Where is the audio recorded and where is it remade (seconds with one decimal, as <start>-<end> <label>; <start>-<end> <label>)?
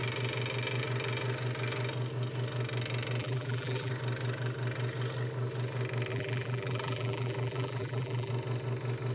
0.0-3.2 recorded; 3.2-3.9 remade; 3.9-6.1 recorded; 6.1-8.3 remade; 8.3-9.1 recorded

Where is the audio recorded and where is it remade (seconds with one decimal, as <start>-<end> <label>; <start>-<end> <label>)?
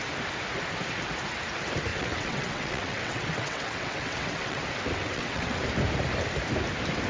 0.0-1.9 recorded; 1.9-4.6 remade; 4.6-5.0 recorded; 5.0-5.6 remade; 5.6-7.1 recorded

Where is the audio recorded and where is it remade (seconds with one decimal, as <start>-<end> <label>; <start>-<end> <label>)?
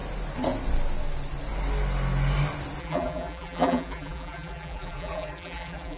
0.0-2.8 recorded; 2.8-6.0 remade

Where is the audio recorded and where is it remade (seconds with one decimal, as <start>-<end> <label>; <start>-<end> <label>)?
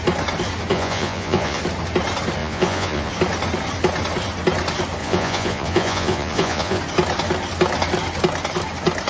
0.0-0.7 recorded; 0.7-1.6 remade; 1.6-2.4 recorded; 2.4-3.1 remade; 3.1-5.0 recorded; 5.0-6.8 remade; 6.8-9.1 recorded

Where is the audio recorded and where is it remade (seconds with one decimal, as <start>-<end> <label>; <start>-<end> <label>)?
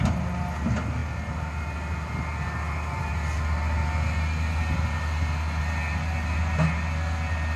0.0-7.6 recorded